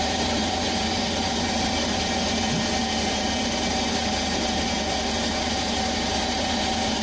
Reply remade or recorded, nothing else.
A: recorded